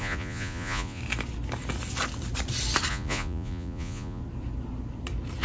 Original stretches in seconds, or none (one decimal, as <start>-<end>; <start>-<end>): 1.0-2.9; 4.2-5.4